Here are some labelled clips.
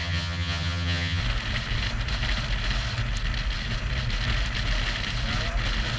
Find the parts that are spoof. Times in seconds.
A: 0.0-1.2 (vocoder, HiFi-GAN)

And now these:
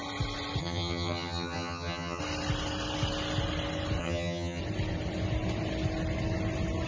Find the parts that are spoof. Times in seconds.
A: 0.6-2.2 (vocoder, HiFi-GAN); 4.0-4.6

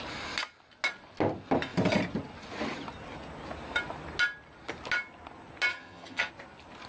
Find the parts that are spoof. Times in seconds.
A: 5.7-6.3 (vocoder, HiFi-GAN)

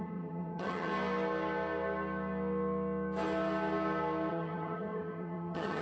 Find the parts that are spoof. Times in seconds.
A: 0.0-0.9 (vocoder, HiFi-GAN); 4.3-5.8

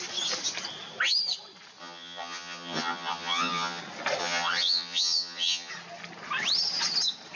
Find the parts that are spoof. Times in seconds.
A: 1.8-3.8 (vocoder, HiFi-GAN); 4.2-5.7

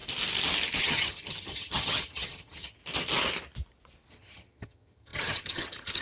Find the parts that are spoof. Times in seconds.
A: 0.8-2.8 (vocoder, HiFi-GAN); 4.1-6.0